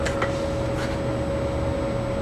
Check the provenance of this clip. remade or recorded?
recorded